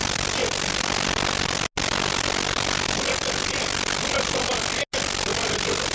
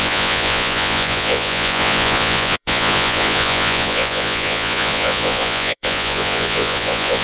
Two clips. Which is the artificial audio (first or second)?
second